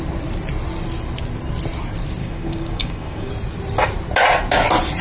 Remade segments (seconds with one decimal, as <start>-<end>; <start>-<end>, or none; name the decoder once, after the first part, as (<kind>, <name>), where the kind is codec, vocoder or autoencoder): 2.2-3.3 (codec, DAC)